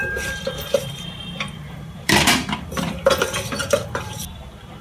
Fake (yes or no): yes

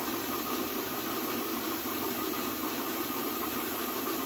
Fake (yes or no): yes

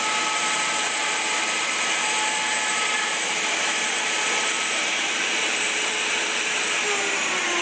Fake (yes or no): yes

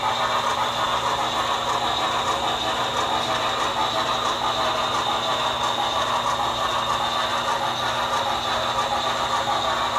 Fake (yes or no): no